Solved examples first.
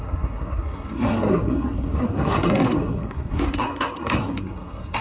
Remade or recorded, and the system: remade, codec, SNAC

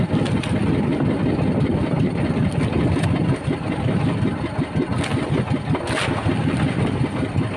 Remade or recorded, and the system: recorded